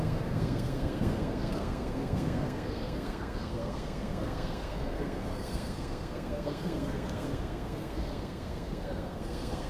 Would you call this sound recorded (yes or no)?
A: no